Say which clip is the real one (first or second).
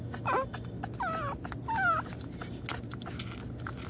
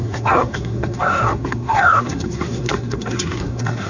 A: first